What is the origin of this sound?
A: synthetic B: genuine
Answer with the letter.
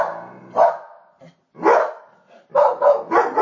B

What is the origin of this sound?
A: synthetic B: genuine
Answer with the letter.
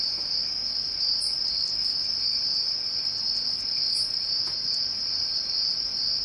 B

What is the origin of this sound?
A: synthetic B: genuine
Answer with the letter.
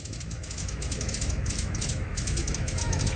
A